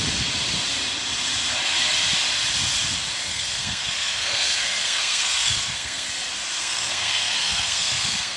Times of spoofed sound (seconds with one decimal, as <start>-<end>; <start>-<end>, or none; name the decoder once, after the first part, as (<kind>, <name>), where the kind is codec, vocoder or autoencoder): 3.3-6.1 (codec, SNAC); 6.6-8.4